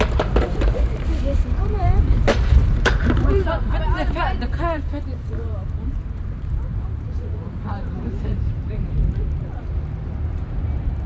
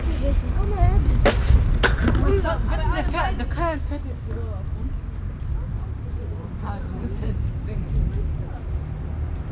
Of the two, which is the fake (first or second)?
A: first